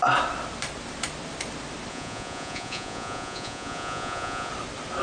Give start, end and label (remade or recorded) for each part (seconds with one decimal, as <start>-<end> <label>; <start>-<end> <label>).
0.0-1.9 recorded; 1.9-4.5 remade; 4.5-5.0 recorded